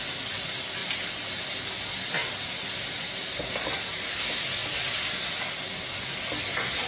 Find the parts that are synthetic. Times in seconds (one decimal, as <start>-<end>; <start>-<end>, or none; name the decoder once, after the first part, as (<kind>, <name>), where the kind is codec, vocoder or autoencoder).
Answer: 0.8-1.8 (vocoder, BigVGAN v2); 2.2-4.1